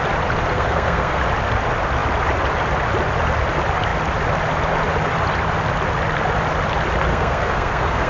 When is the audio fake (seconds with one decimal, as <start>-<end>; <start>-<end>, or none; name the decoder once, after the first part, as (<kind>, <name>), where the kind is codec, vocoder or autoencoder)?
0.5-1.2 (codec, SNAC); 7.1-8.1